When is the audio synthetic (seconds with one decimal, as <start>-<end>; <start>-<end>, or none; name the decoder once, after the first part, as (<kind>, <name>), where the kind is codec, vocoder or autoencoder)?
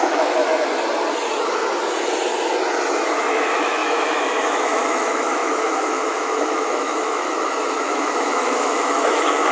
0.0-0.4 (autoencoder, DAC-VAE); 3.2-9.5